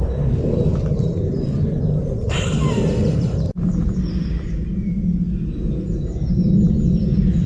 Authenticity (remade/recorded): recorded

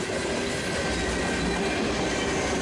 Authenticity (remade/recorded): recorded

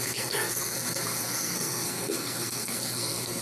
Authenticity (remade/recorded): remade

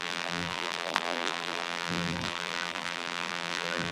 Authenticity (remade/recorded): remade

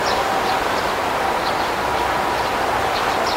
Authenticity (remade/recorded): remade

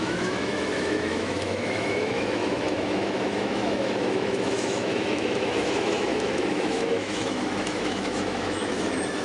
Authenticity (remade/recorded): remade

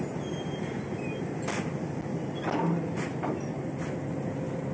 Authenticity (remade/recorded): recorded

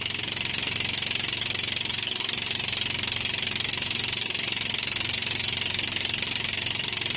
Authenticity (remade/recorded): recorded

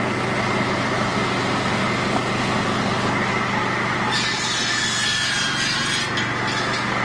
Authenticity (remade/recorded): recorded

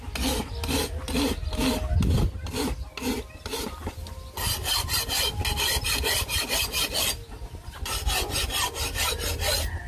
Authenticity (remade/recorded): recorded